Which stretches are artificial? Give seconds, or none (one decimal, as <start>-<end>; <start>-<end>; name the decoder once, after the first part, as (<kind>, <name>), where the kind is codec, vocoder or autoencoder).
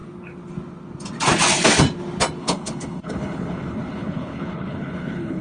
2.4-5.4 (codec, HILCodec)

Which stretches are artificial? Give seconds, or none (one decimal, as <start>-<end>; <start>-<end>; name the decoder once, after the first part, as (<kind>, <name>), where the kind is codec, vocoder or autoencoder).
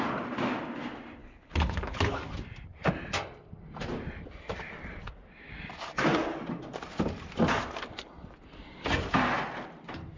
1.2-2.2 (codec, HILCodec)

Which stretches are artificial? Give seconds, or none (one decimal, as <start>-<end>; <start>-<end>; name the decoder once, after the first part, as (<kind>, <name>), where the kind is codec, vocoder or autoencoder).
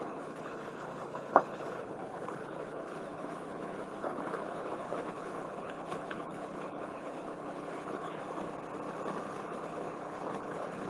0.0-8.2 (codec, HILCodec); 9.3-10.9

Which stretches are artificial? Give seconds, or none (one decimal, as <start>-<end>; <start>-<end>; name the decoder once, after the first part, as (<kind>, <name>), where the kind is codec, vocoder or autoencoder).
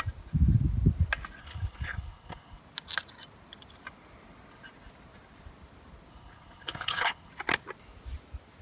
1.4-2.6 (codec, HILCodec); 6.1-7.3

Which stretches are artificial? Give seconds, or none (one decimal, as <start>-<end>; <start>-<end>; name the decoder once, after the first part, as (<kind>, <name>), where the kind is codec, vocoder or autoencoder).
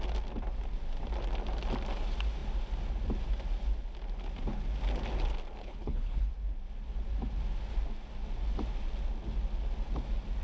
5.6-6.3 (codec, HILCodec)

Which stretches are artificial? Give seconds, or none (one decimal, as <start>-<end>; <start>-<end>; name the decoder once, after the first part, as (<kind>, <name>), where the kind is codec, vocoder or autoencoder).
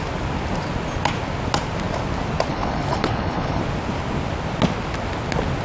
2.5-3.6 (codec, HILCodec)